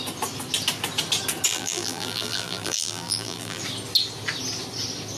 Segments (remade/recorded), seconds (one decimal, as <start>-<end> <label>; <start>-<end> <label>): 0.0-1.5 recorded; 1.5-3.6 remade; 3.6-5.2 recorded